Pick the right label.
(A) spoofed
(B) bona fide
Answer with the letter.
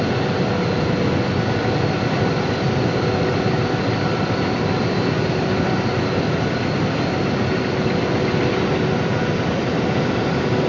B